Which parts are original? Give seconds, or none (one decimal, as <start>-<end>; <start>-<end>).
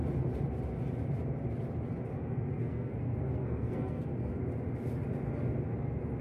0.0-2.1; 4.3-6.2